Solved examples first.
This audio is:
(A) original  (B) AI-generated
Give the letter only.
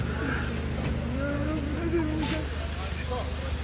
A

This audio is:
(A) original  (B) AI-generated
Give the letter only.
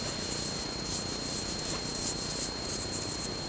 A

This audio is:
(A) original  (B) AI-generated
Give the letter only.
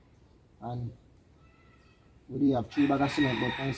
B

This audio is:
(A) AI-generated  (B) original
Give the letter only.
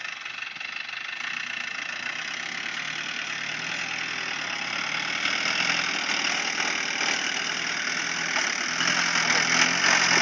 B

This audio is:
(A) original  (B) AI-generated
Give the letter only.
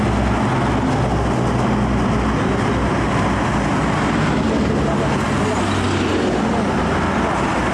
A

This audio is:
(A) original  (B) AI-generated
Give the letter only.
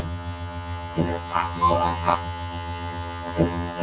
B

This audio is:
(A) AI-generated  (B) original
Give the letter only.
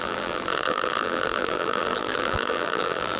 A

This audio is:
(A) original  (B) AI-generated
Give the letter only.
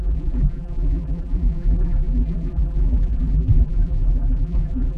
B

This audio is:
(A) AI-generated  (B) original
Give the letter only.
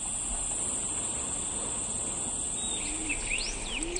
B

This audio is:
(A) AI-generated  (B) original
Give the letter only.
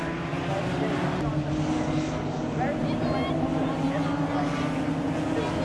B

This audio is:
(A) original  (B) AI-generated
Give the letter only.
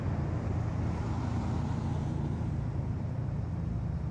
A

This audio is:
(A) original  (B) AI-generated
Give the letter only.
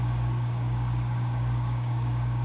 B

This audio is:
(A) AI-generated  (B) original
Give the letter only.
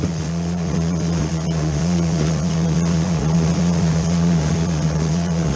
A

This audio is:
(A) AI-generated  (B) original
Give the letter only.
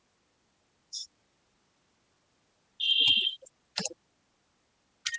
B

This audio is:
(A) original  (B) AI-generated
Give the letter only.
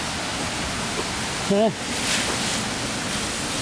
A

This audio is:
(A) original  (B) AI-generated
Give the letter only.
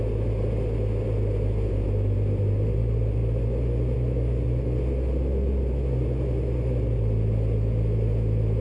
A